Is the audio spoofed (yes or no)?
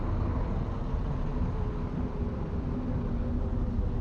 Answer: no